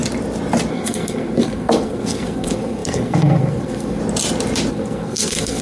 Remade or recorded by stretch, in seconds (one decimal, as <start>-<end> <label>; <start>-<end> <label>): 0.0-0.7 recorded; 0.7-4.0 remade; 4.0-4.7 recorded; 4.7-5.6 remade